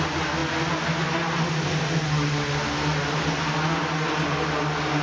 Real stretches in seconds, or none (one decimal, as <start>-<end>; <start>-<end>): 0.0-5.0